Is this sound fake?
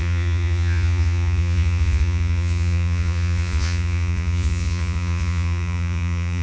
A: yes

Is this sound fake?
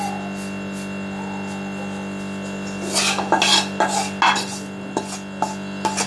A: no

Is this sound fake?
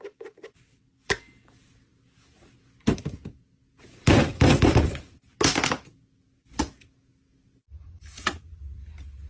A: no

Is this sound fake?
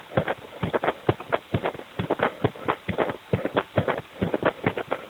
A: no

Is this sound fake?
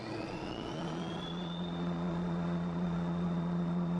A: yes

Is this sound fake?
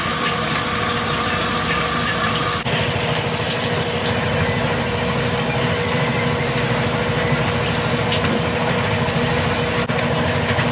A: no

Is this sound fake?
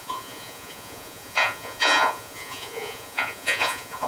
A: yes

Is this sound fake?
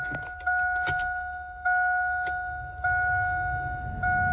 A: no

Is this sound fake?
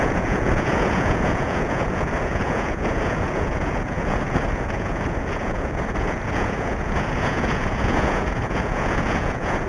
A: yes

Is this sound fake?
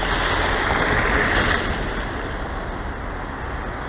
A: no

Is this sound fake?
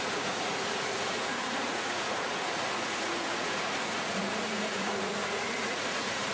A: yes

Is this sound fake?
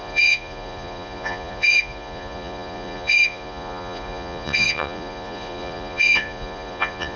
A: yes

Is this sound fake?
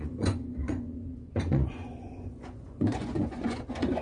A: yes